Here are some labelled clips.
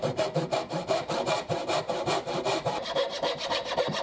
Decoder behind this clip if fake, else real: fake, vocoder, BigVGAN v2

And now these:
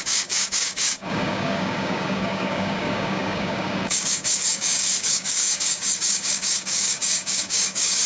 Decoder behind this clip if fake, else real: fake, codec, DAC